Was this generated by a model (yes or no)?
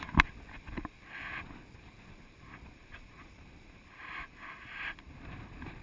no